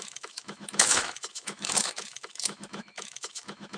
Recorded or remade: remade